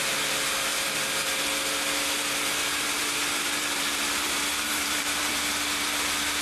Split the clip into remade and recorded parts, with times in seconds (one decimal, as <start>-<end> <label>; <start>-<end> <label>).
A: 0.0-0.7 recorded; 0.7-1.4 remade; 1.4-2.6 recorded; 2.6-5.4 remade; 5.4-6.4 recorded